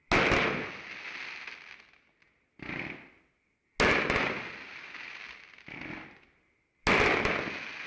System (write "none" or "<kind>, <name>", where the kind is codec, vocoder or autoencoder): none